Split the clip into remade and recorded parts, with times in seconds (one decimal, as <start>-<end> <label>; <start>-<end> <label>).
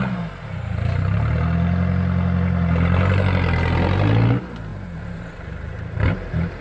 0.0-4.7 recorded; 4.7-6.6 remade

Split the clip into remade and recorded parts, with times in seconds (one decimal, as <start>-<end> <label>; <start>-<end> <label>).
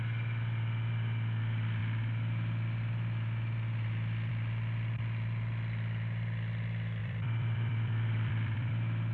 0.0-7.0 recorded; 7.0-8.7 remade; 8.7-9.1 recorded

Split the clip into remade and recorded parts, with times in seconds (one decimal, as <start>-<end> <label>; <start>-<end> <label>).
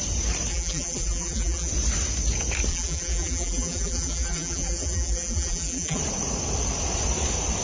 0.0-0.5 recorded; 0.5-1.7 remade; 1.7-2.7 recorded; 2.7-6.0 remade; 6.0-7.6 recorded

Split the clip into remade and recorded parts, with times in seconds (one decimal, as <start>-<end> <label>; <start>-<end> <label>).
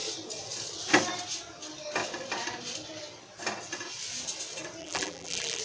0.0-4.8 recorded; 4.8-5.6 remade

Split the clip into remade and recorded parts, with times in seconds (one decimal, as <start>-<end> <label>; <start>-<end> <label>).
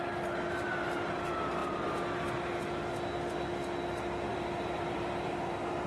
0.0-4.3 recorded; 4.3-5.9 remade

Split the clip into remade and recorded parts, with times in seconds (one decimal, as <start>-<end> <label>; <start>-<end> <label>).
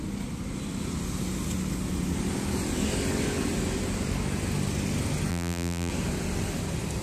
0.0-5.3 recorded; 5.3-5.9 remade; 5.9-7.0 recorded